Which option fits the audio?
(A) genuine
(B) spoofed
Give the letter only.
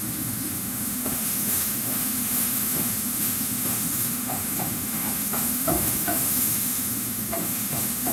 B